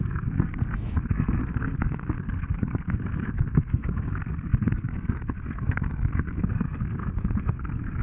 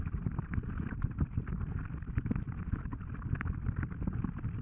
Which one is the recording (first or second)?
second